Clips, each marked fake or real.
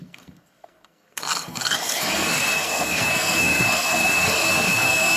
fake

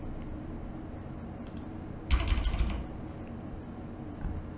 real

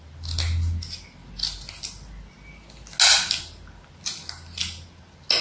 real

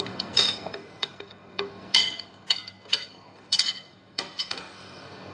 fake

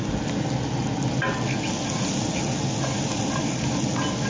real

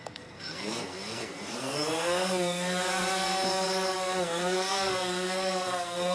fake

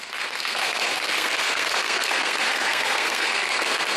fake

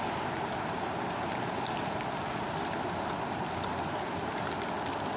real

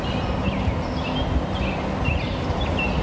real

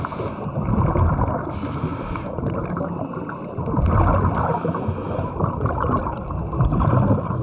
real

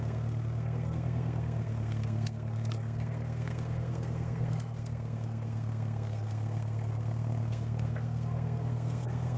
fake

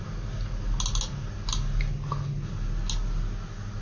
real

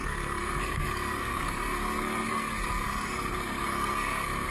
fake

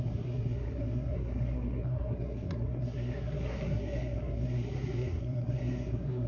fake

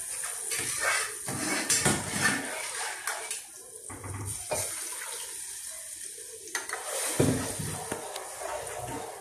real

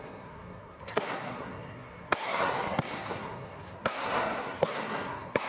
fake